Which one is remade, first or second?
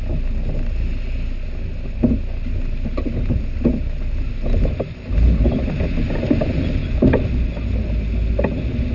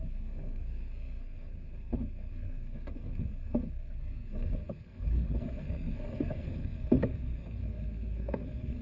second